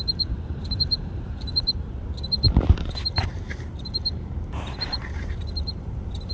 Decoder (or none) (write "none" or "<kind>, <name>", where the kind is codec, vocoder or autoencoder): vocoder, BigVGAN v2